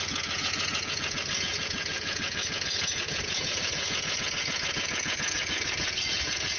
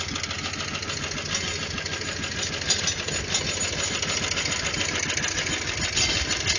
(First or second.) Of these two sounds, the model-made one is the first